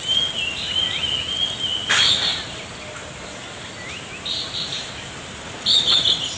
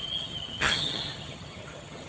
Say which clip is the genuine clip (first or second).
first